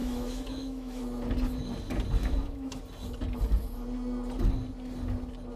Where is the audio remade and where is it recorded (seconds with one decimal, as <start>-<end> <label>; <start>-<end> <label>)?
0.0-1.0 remade; 1.0-2.2 recorded; 2.2-2.8 remade; 2.8-5.6 recorded

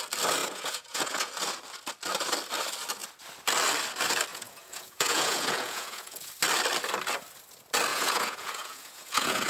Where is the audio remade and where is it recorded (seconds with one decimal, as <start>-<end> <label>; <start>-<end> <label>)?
0.0-0.4 recorded; 0.4-1.3 remade; 1.3-4.3 recorded; 4.3-6.3 remade; 6.3-7.9 recorded; 7.9-9.5 remade